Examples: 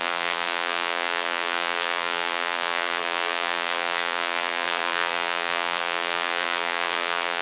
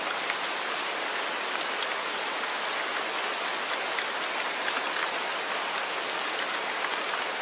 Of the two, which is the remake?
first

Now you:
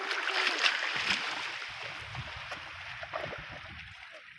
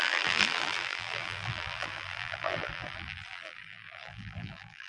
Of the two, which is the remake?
second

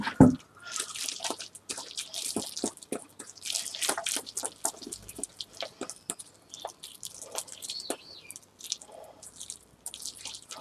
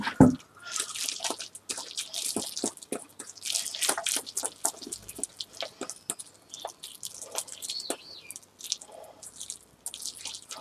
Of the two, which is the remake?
first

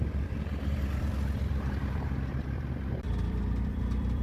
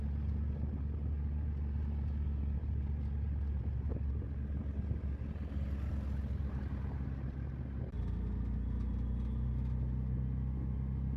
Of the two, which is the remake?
first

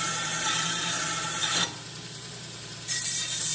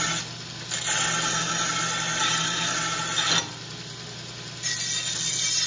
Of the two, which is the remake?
first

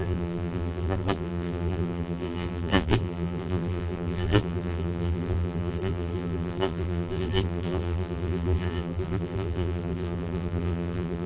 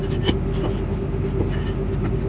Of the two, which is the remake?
first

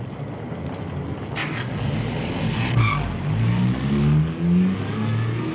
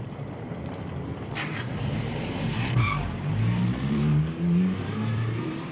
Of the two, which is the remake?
second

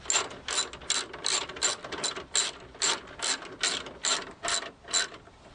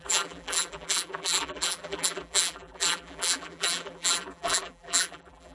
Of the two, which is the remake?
second